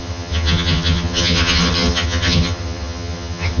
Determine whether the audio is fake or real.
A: fake